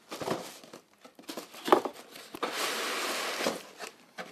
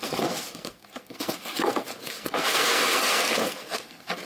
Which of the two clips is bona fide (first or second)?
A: first